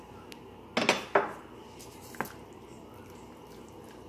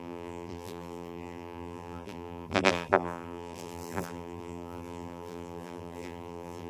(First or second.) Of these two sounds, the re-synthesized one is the second